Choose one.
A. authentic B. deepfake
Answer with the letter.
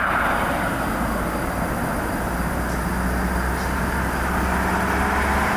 A